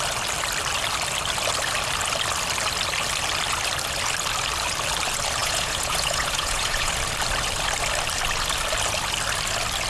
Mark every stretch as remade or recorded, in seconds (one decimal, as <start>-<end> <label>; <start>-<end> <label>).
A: 0.0-5.4 recorded; 5.4-6.9 remade; 6.9-9.9 recorded